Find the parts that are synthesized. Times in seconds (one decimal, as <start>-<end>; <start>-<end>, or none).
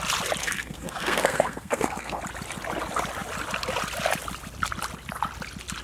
0.4-2.2